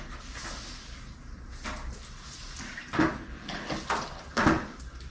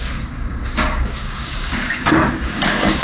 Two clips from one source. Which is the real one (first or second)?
first